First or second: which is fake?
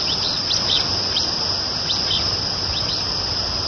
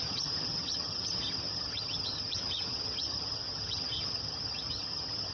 second